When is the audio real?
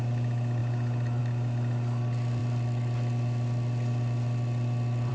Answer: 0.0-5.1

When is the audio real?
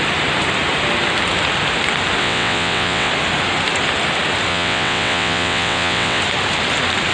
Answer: 0.0-2.2; 3.1-4.5; 6.2-7.1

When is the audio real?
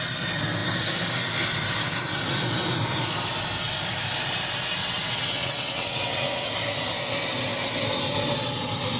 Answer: 0.0-4.8; 6.5-9.0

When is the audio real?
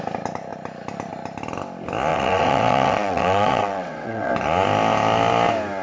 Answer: 0.0-2.1; 4.3-5.8